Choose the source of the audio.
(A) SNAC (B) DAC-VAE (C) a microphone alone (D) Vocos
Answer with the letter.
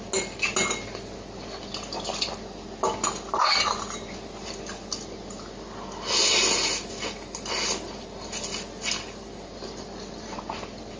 C